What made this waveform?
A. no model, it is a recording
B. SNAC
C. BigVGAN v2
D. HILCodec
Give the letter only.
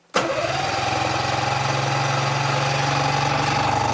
A